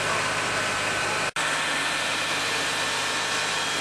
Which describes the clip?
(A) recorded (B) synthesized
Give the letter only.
A